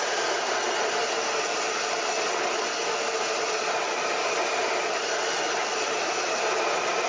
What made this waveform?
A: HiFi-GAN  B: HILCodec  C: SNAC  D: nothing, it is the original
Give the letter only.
D